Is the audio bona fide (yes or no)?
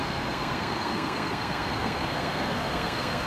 no